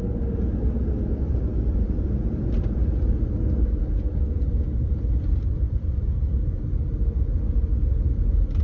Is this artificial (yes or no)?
no